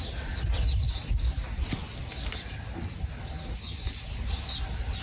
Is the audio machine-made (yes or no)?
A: no